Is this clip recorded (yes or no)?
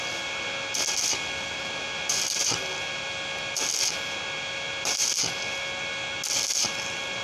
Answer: yes